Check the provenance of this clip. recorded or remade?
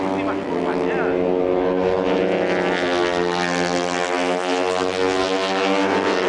recorded